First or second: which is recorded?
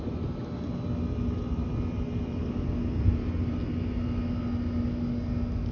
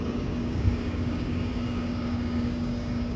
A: first